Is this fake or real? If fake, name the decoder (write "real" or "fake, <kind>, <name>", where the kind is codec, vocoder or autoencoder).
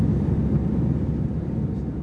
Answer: real